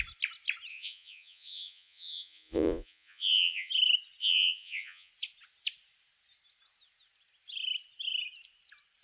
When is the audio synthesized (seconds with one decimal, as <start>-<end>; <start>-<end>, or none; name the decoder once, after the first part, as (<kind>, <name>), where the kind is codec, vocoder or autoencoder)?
0.7-3.7 (vocoder, Vocos); 4.2-5.1